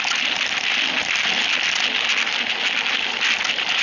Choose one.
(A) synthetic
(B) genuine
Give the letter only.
B